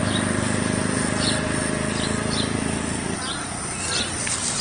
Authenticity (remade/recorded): recorded